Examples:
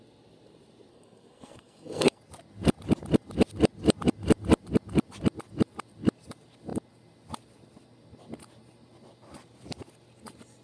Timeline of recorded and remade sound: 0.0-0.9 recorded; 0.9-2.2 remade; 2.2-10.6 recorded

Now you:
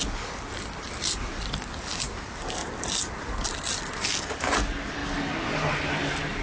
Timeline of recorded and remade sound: 0.0-6.4 recorded

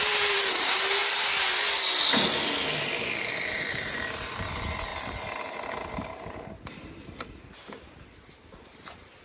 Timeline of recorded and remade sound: 0.0-1.0 remade; 1.0-3.5 recorded; 3.5-9.2 remade

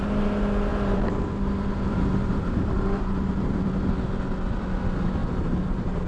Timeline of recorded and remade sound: 0.0-0.7 recorded; 0.7-3.7 remade; 3.7-5.2 recorded; 5.2-6.1 remade